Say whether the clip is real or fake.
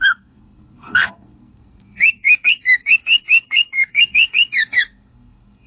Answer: fake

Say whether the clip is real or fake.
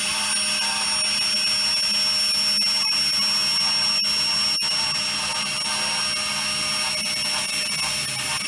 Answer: real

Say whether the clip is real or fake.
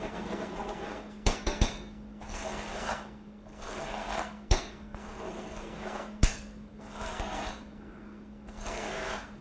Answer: fake